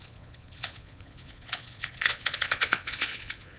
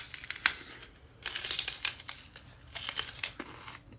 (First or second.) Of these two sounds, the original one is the second